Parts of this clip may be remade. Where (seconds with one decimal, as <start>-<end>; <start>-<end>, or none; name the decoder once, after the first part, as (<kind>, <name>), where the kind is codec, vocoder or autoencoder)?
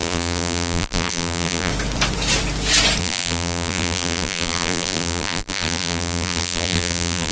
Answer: 0.0-1.7 (vocoder, BigVGAN v2); 3.0-7.3